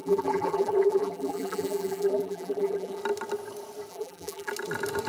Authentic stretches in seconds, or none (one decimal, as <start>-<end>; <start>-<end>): 3.0-3.9; 4.5-5.1